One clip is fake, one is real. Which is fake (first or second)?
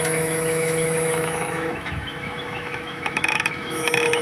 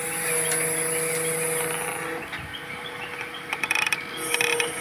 first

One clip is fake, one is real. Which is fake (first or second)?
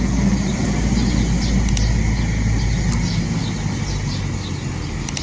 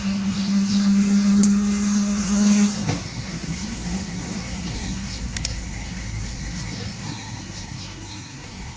second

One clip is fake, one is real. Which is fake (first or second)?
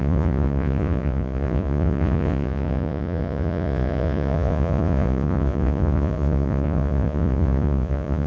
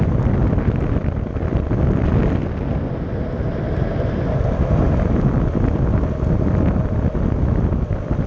first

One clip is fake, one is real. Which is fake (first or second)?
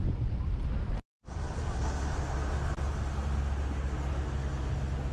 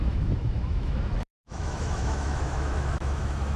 second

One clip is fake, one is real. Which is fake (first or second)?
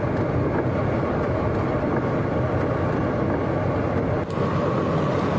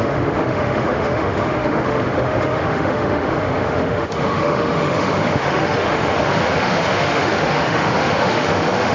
second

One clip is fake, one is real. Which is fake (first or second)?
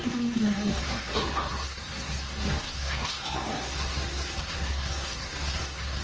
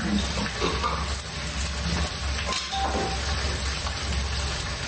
first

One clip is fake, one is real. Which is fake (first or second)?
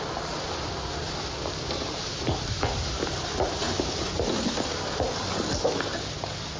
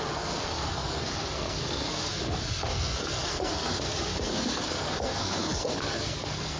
second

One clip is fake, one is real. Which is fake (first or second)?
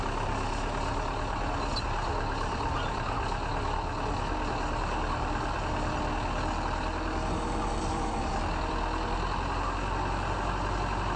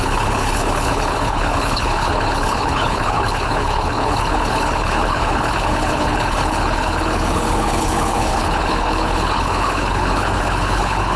second